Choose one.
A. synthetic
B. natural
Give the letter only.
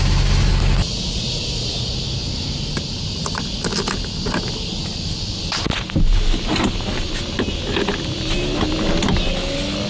B